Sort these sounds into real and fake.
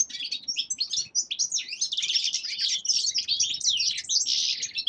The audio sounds real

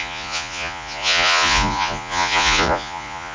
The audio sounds fake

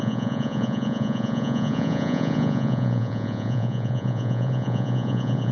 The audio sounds fake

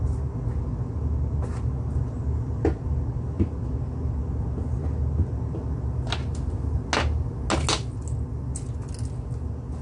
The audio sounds real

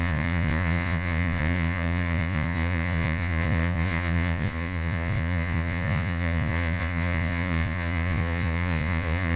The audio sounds fake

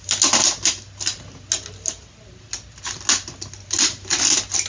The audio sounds real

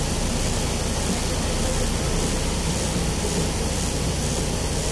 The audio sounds real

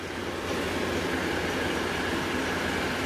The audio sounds real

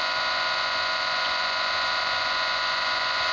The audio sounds fake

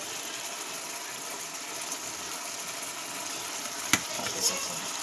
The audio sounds real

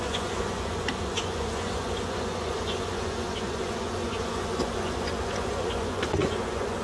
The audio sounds fake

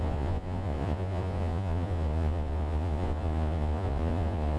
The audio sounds fake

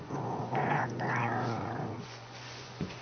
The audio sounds fake